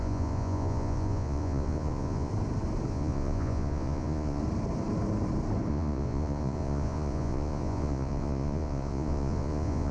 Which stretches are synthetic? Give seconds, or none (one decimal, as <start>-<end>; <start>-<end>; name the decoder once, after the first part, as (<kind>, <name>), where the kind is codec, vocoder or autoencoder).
0.0-2.3 (vocoder, Vocos); 2.9-4.4; 5.7-9.9

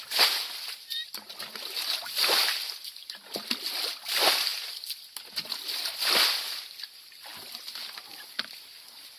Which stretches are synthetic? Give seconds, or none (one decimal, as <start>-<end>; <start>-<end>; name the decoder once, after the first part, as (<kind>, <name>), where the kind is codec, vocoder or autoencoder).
none

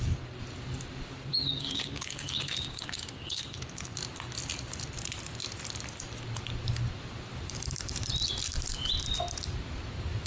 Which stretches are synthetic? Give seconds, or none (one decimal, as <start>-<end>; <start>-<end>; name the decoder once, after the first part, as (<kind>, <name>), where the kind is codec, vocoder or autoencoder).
1.3-3.4 (codec, DAC)

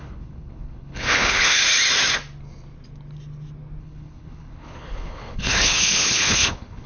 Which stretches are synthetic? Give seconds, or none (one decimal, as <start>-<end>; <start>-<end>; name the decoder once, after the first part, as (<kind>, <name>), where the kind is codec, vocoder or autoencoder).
0.0-1.6 (codec, HILCodec); 3.8-6.9

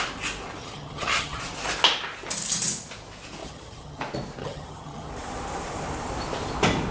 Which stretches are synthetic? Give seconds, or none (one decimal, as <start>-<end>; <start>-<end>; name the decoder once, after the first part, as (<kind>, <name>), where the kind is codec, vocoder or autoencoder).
0.6-1.4 (vocoder, HiFi-GAN); 3.4-4.0; 4.4-5.1